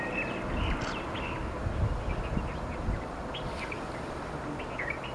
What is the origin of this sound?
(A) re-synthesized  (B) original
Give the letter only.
B